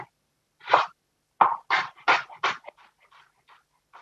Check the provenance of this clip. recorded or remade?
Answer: recorded